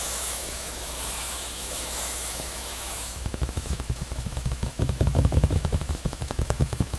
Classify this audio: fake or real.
fake